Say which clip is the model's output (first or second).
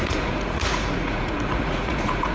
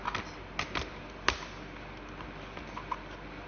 first